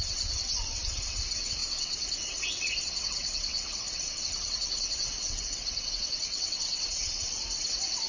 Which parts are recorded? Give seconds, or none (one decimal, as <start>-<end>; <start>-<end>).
none